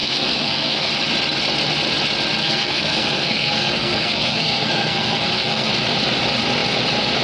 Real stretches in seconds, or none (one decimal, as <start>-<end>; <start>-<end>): 0.9-2.4; 5.7-7.2